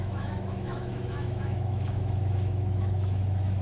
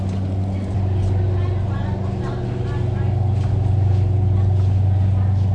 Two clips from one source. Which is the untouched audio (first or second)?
second